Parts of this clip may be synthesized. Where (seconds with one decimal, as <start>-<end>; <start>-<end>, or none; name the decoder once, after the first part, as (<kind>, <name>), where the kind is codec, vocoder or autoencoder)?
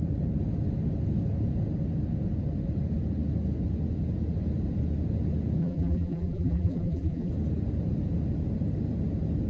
5.6-7.3 (vocoder, BigVGAN v2)